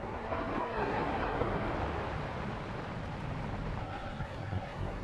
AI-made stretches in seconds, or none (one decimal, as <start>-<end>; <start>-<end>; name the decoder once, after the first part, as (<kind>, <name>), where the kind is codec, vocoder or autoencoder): 0.0-1.7 (codec, SNAC); 3.8-5.0